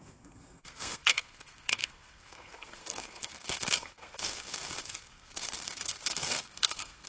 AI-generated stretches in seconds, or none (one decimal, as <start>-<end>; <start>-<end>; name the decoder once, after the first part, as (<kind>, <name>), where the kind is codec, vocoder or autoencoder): 0.0-7.1 (codec, SNAC)